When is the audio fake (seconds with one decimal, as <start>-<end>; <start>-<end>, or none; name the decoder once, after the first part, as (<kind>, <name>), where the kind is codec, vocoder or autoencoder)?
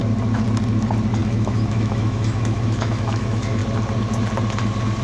1.2-3.6 (autoencoder, DAC-VAE)